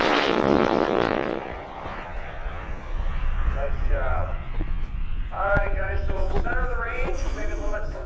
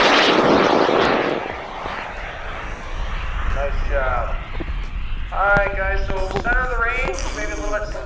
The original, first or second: second